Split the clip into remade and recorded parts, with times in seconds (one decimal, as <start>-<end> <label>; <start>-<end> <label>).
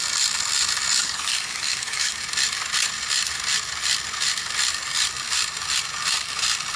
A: 0.0-1.0 recorded; 1.0-2.2 remade; 2.2-6.8 recorded